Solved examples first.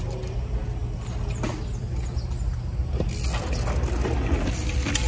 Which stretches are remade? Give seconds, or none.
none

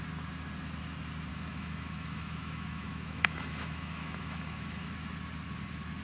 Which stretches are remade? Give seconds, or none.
1.3-4.9 (autoencoder, DAC-VAE)

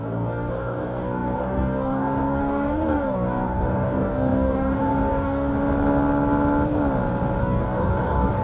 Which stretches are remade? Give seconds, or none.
0.0-5.5 (codec, DAC); 7.4-8.4

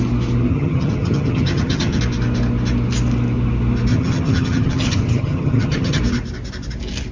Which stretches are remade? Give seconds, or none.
0.5-2.0 (vocoder, HiFi-GAN); 3.9-6.0

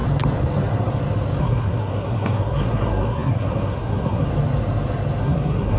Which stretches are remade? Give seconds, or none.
1.4-4.3 (codec, SNAC); 5.2-5.8

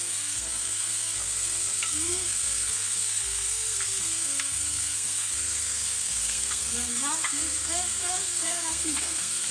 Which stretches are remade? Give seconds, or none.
0.0-9.5 (codec, SNAC)

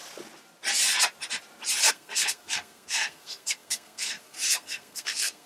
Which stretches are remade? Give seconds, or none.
1.9-5.5 (codec, SNAC)

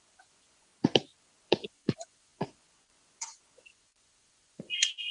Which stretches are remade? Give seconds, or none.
0.0-0.7 (vocoder, Vocos); 1.2-5.1